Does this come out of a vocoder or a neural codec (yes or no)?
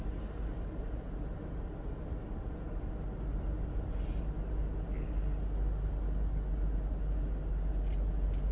no